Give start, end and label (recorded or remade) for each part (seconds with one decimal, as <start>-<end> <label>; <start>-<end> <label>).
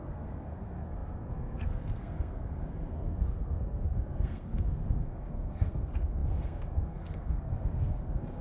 0.0-8.4 remade